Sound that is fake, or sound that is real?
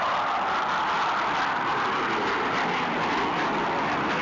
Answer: real